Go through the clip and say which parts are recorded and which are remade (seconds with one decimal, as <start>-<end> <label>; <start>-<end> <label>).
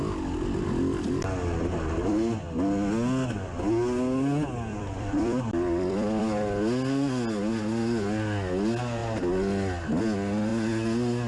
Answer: 0.0-4.7 recorded; 4.7-6.2 remade; 6.2-11.3 recorded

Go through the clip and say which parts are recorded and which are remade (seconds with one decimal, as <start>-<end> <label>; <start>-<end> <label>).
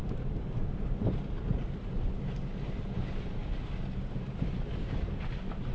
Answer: 0.0-5.7 recorded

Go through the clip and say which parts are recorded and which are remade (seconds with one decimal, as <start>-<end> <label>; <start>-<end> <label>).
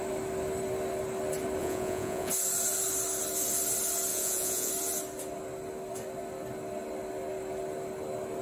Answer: 0.0-1.6 recorded; 1.6-2.3 remade; 2.3-4.1 recorded; 4.1-4.7 remade; 4.7-8.4 recorded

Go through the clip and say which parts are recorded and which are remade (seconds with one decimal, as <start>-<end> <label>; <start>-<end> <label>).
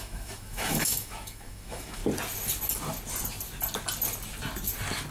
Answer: 0.0-2.0 remade; 2.0-5.1 recorded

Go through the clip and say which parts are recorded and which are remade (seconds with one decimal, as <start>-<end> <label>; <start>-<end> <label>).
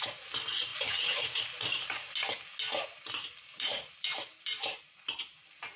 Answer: 0.0-0.7 recorded; 0.7-2.1 remade; 2.1-3.5 recorded; 3.5-4.8 remade; 4.8-5.8 recorded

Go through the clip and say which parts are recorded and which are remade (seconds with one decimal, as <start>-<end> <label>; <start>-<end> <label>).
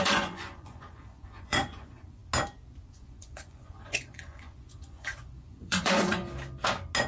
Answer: 0.0-2.2 remade; 2.2-2.9 recorded; 2.9-6.2 remade; 6.2-7.1 recorded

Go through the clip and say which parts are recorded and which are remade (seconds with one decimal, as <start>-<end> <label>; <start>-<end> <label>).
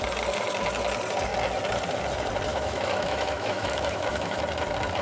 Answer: 0.0-2.5 recorded; 2.5-4.4 remade; 4.4-5.0 recorded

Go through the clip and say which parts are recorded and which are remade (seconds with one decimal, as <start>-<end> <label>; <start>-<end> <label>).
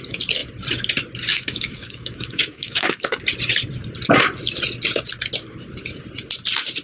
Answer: 0.0-1.3 recorded; 1.3-3.2 remade; 3.2-6.8 recorded